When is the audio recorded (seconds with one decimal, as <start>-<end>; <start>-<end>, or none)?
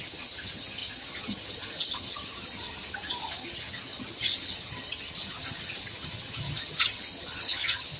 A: none